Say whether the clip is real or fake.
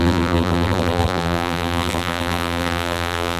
fake